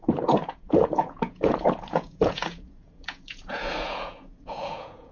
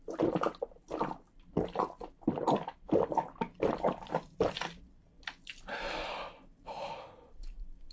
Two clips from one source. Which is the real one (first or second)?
second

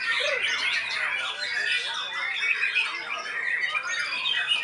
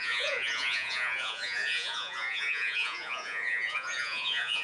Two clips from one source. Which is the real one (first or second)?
first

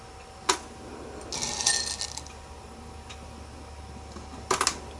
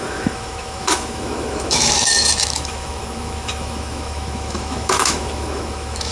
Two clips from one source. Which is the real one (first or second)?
first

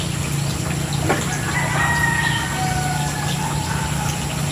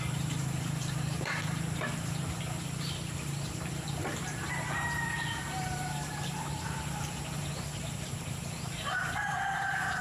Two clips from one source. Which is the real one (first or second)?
first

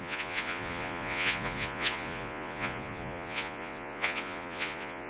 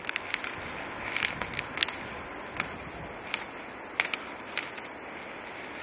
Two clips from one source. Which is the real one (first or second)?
second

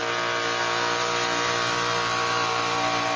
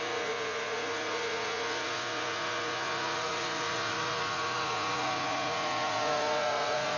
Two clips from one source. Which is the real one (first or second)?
first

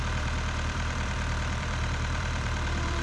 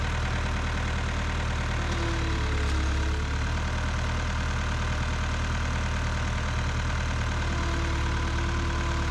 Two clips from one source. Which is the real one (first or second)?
second